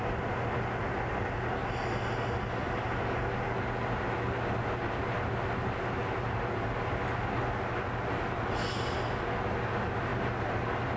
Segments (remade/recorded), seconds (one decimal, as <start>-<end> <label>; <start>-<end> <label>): 0.0-11.0 recorded